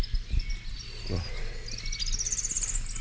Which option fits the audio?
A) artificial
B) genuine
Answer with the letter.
B